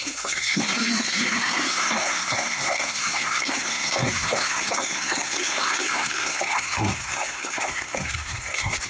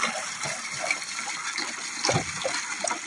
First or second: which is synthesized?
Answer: first